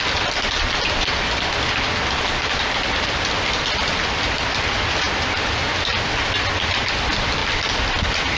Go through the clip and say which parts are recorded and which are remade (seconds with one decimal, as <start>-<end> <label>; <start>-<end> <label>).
0.0-8.4 recorded

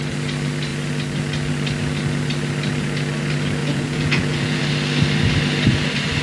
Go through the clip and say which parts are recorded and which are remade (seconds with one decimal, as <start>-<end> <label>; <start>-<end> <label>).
0.0-3.6 recorded; 3.6-4.6 remade; 4.6-6.2 recorded

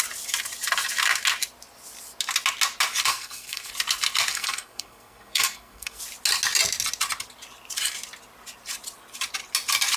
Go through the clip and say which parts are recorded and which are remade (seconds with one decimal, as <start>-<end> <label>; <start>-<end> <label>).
0.0-3.1 recorded; 3.1-3.7 remade; 3.7-4.3 recorded; 4.3-6.0 remade; 6.0-10.0 recorded

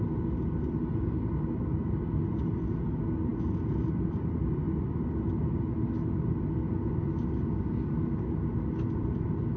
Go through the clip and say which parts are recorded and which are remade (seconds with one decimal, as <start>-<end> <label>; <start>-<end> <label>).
0.0-9.6 recorded

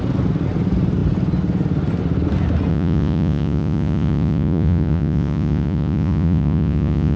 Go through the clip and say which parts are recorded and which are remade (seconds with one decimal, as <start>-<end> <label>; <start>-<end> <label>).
0.0-2.7 recorded; 2.7-7.2 remade

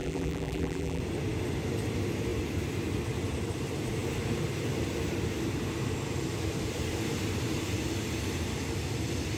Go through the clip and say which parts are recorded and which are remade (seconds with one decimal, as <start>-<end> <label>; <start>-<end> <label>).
0.0-1.0 remade; 1.0-9.4 recorded